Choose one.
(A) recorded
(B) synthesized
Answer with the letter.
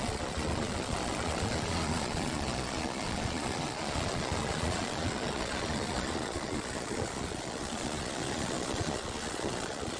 B